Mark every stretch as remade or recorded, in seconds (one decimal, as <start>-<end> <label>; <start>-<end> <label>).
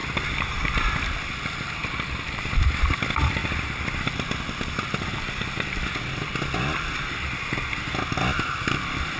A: 0.0-9.2 recorded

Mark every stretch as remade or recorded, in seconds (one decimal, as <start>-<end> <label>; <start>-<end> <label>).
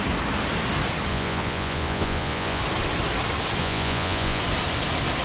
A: 0.0-1.1 recorded; 1.1-2.6 remade; 2.6-3.6 recorded; 3.6-4.4 remade; 4.4-5.2 recorded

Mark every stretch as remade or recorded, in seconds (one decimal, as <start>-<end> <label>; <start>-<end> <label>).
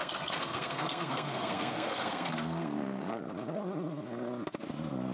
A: 0.0-3.1 remade; 3.1-5.1 recorded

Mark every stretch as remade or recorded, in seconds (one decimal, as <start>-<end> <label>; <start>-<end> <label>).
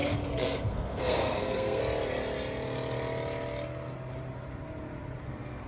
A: 0.0-1.8 remade; 1.8-5.2 recorded; 5.2-5.7 remade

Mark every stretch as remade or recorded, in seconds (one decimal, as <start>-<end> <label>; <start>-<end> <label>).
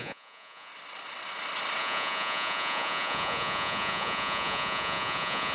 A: 0.0-0.7 remade; 0.7-1.8 recorded; 1.8-5.5 remade